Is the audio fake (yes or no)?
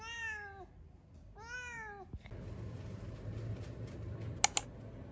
no